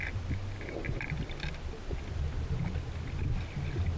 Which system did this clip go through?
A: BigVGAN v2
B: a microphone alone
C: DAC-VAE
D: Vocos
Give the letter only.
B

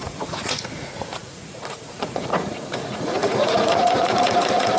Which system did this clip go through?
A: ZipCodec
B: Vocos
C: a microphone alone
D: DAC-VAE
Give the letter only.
B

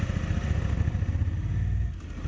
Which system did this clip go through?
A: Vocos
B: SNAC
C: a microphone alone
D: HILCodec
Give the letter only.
C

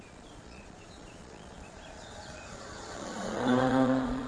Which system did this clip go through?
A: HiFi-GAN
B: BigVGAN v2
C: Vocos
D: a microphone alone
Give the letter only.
C